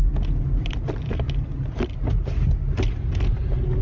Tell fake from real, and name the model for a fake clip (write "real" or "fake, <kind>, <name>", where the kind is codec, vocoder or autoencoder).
real